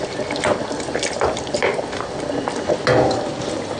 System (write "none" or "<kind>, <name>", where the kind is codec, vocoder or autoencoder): none